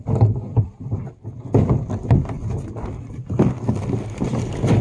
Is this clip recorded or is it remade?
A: recorded